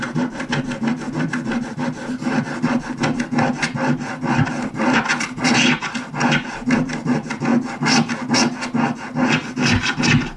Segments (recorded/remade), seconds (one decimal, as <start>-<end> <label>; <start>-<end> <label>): 0.0-7.5 remade; 7.5-9.5 recorded; 9.5-10.4 remade